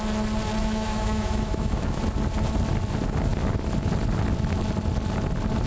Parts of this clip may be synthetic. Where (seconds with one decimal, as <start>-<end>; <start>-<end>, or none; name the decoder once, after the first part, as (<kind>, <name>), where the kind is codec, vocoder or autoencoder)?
0.6-2.0 (autoencoder, DAC-VAE)